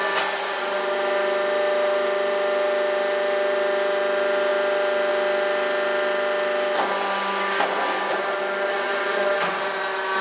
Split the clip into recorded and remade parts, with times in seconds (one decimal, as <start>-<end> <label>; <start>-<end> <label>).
0.0-10.2 recorded